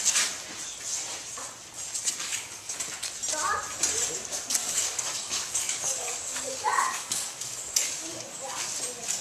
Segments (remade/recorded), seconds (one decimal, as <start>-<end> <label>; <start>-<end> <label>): 0.0-2.2 recorded; 2.2-2.8 remade; 2.8-4.6 recorded; 4.6-8.5 remade; 8.5-9.2 recorded